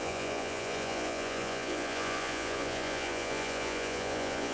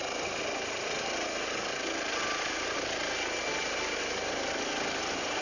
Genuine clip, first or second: second